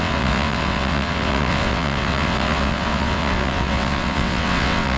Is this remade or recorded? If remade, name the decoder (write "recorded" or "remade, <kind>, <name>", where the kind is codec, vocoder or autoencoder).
remade, vocoder, WaveNeXt